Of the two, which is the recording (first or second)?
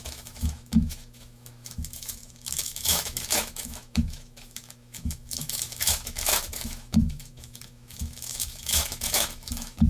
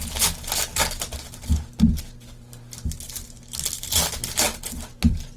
second